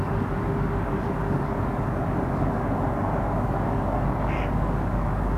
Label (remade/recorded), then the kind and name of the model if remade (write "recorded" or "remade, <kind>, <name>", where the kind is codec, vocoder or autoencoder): remade, codec, DAC